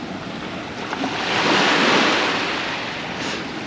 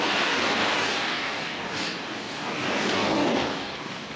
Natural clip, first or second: first